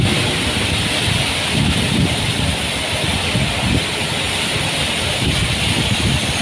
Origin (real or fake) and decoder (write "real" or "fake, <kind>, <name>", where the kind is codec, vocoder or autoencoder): real